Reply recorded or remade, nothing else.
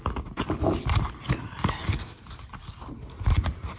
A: recorded